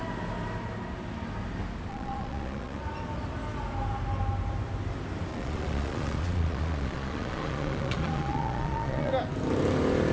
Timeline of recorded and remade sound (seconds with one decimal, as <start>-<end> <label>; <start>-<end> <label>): 0.0-1.9 recorded; 1.9-2.8 remade; 2.8-5.3 recorded; 5.3-9.1 remade; 9.1-10.1 recorded